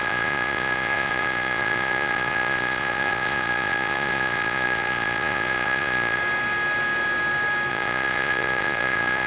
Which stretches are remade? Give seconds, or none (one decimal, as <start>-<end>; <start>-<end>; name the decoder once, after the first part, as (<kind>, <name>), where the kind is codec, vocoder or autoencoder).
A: 0.0-6.2 (vocoder, Vocos); 7.7-9.3